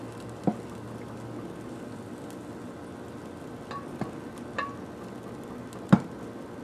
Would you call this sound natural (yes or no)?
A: yes